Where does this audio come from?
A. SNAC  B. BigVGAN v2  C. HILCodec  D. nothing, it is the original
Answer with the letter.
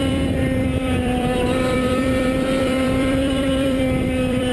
B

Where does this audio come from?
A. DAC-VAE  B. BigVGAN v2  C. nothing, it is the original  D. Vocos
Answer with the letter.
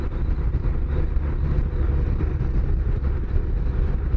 C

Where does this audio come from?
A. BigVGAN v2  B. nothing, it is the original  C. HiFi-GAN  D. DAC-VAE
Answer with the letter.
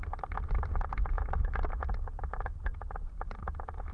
B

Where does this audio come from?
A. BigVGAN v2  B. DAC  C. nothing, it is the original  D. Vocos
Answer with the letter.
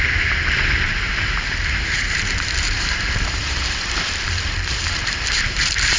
A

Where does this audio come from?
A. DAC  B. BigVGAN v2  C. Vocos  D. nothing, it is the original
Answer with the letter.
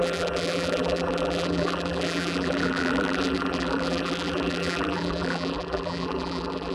B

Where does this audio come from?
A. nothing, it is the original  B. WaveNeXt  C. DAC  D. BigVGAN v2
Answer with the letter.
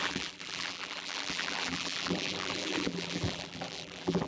D